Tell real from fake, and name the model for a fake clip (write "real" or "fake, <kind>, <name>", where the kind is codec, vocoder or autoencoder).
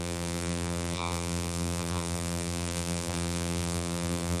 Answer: fake, vocoder, BigVGAN v2